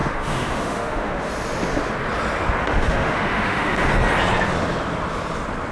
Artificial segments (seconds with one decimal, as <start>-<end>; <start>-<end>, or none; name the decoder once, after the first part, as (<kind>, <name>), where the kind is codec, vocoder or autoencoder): 0.0-1.3 (autoencoder, DAC-VAE); 2.6-3.9